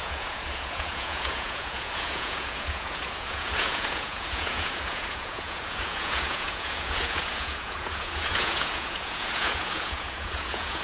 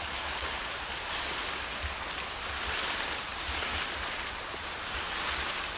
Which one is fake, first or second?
first